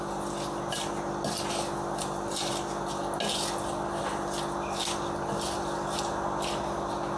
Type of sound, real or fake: real